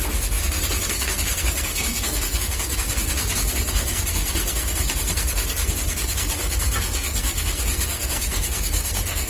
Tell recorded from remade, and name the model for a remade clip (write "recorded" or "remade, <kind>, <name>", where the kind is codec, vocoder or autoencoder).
remade, codec, SNAC